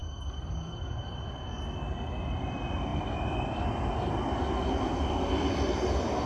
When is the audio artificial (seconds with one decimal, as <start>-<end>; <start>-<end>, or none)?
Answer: none